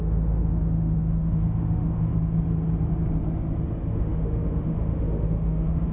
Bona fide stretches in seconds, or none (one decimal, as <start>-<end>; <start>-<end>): 2.1-3.9